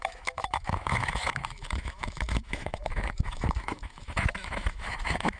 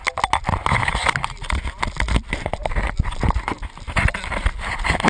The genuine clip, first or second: second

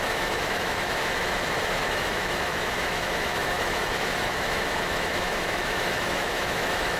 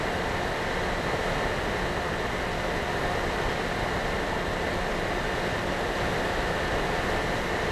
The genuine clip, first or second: second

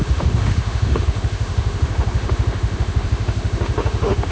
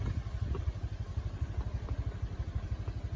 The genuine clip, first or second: second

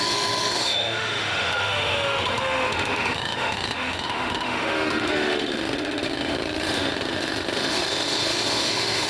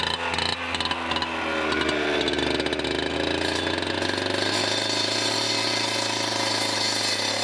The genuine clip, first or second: second